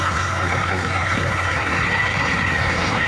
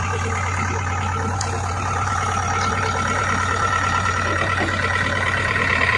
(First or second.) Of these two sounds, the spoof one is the first